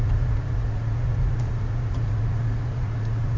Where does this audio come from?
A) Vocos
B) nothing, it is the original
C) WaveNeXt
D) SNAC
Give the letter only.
A